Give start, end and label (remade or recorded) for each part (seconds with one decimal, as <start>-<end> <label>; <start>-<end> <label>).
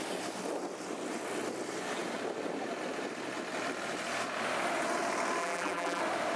0.0-5.4 recorded; 5.4-6.0 remade; 6.0-6.4 recorded